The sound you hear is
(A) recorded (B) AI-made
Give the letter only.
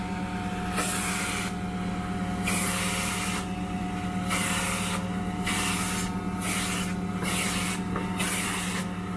A